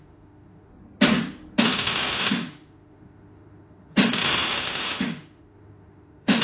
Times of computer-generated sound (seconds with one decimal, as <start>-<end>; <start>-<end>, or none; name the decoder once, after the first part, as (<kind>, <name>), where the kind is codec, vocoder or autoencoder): 0.0-0.7 (autoencoder, DAC-VAE); 1.6-6.4